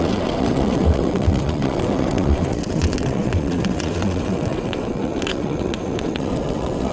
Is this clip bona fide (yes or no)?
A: no